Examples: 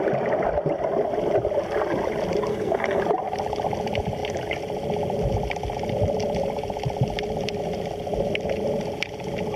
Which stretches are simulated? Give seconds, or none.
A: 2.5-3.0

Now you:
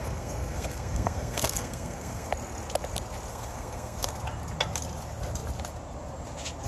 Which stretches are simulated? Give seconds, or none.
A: 0.0-2.3; 3.3-4.2

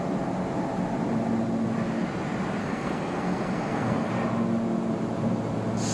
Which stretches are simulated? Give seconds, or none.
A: 2.6-4.1